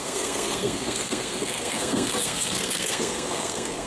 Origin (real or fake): fake